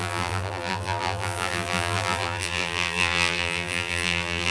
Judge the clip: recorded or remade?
remade